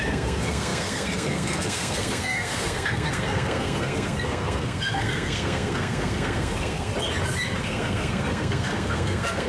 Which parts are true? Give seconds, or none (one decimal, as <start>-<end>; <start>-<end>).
6.9-7.6